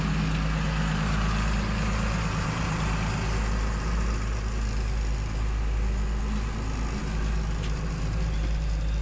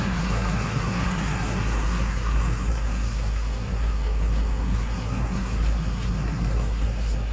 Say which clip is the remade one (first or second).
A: second